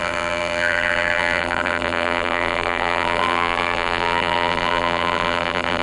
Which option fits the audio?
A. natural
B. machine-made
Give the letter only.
B